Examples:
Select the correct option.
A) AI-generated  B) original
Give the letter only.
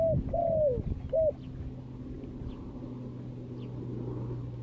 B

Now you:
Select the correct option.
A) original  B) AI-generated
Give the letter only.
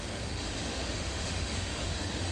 B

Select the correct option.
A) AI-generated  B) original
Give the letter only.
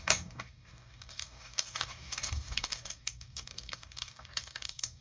A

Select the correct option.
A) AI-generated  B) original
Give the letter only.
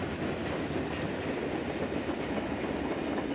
B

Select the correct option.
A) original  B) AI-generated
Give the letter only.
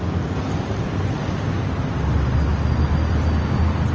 A